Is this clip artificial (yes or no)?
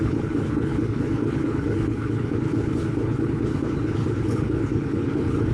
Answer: yes